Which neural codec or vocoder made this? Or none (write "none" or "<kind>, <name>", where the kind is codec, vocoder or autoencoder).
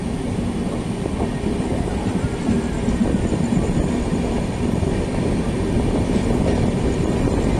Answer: none